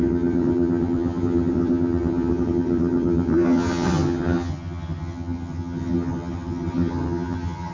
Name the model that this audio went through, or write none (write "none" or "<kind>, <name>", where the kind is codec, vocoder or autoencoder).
vocoder, HiFi-GAN